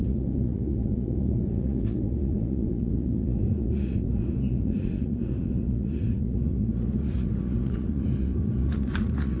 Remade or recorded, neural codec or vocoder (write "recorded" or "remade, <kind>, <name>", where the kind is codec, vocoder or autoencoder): remade, vocoder, Vocos